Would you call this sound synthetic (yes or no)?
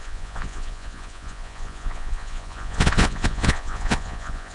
yes